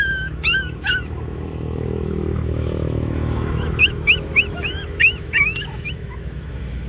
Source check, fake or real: fake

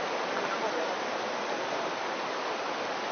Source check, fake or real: real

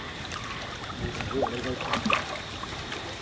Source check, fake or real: real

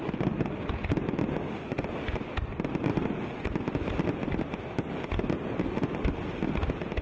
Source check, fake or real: real